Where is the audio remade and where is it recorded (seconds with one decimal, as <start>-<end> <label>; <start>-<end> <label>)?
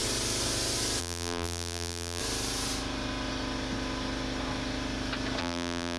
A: 0.0-1.0 recorded; 1.0-2.2 remade; 2.2-5.4 recorded; 5.4-6.0 remade